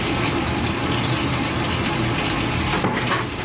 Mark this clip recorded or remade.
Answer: recorded